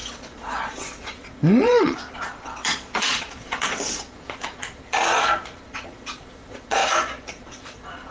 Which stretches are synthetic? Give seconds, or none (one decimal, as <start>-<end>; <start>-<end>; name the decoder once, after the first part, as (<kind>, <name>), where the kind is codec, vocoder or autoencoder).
0.0-6.8 (vocoder, Vocos); 7.3-8.1